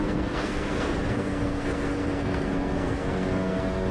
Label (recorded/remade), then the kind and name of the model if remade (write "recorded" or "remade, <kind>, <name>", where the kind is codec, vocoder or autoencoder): remade, codec, SNAC